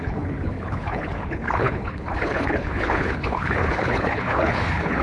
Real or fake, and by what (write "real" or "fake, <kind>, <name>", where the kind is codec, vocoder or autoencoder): fake, codec, HILCodec